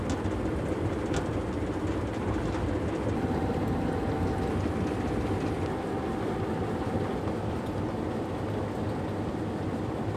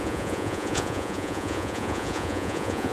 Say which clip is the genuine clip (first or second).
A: first